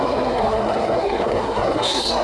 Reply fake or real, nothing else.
fake